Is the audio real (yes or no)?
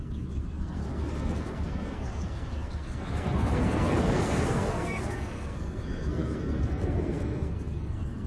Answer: no